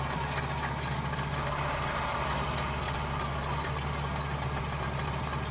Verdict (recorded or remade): recorded